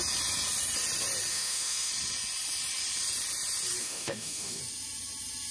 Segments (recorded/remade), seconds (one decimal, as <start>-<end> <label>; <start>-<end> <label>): 0.0-1.3 recorded; 1.3-1.9 remade; 1.9-3.8 recorded; 3.8-4.6 remade; 4.6-5.5 recorded